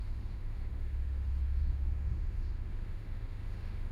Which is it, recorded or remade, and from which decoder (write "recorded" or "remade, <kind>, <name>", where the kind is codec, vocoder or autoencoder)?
remade, autoencoder, DAC-VAE